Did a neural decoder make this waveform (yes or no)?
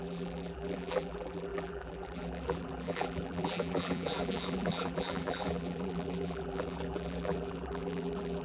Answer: yes